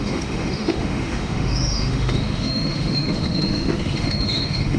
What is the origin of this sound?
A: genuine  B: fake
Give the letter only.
B